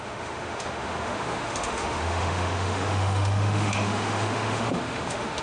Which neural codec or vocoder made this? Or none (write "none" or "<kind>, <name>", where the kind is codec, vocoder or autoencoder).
autoencoder, DAC-VAE